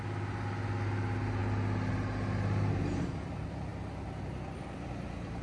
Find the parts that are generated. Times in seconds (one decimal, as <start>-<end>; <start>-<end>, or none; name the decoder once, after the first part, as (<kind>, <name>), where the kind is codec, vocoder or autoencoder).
none